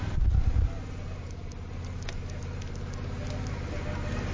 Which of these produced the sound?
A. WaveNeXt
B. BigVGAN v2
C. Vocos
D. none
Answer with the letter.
D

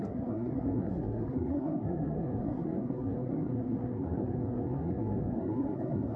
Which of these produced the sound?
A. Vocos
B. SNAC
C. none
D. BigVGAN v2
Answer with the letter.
B